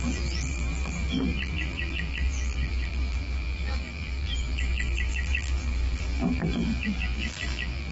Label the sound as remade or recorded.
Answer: remade